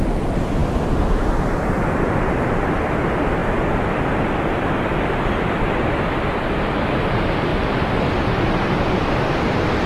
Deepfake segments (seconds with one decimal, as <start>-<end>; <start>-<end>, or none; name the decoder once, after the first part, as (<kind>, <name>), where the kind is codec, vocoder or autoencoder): 0.0-3.4 (vocoder, BigVGAN v2); 5.5-9.9